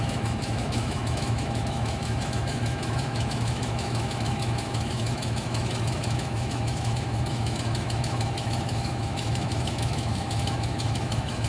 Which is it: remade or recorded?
remade